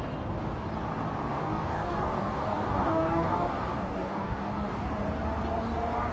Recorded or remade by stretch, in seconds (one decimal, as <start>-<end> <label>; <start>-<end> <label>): 0.0-1.3 recorded; 1.3-5.0 remade; 5.0-6.1 recorded